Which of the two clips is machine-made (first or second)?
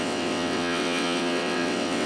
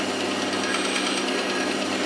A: first